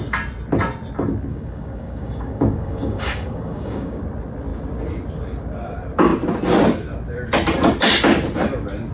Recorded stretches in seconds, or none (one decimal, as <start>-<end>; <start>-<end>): 0.0-1.3; 4.0-8.9